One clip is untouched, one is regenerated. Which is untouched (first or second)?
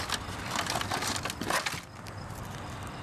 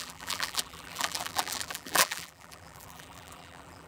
first